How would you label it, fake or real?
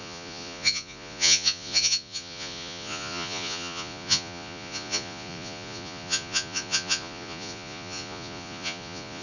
fake